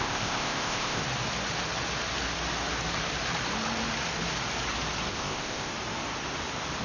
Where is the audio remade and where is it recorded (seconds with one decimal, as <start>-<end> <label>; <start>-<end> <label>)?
0.0-1.0 remade; 1.0-5.1 recorded; 5.1-5.7 remade; 5.7-6.8 recorded